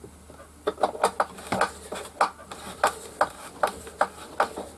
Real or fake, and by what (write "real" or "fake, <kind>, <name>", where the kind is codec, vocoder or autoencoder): real